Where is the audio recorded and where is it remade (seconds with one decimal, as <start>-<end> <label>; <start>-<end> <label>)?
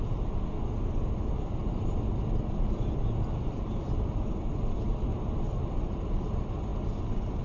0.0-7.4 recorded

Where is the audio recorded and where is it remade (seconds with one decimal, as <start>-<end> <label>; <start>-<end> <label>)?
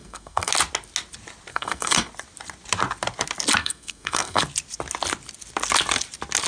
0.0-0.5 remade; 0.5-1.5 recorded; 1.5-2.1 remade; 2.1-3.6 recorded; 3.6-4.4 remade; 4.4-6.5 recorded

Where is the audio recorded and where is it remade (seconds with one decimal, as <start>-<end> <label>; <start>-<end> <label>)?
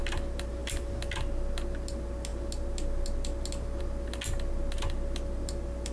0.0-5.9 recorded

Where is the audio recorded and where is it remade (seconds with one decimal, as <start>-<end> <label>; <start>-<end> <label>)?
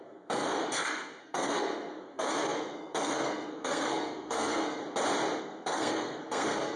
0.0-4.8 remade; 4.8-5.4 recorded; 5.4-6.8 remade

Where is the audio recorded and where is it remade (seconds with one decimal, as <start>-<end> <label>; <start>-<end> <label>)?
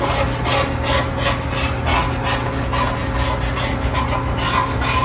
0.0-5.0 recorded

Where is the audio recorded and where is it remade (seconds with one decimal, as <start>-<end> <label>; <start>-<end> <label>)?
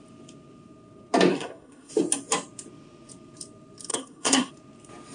0.0-1.3 recorded; 1.3-1.9 remade; 1.9-3.9 recorded; 3.9-4.5 remade; 4.5-5.1 recorded